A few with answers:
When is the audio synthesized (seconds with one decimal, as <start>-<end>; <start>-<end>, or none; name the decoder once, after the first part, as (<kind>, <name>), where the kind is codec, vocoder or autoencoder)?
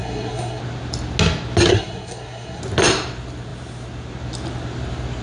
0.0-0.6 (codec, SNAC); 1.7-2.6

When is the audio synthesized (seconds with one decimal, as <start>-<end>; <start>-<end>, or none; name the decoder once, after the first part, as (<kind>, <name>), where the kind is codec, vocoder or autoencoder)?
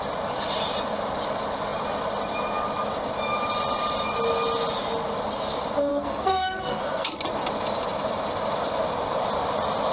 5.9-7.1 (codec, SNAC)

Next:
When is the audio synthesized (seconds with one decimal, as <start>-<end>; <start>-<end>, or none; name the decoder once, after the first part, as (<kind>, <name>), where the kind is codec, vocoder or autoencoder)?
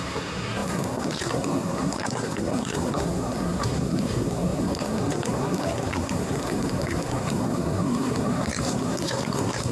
0.0-9.7 (codec, SNAC)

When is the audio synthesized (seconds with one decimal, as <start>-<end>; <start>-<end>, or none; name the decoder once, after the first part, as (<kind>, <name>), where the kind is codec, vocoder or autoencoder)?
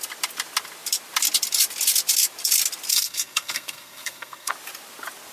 2.9-4.5 (codec, SNAC)